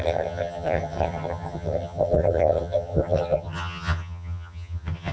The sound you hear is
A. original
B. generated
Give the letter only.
B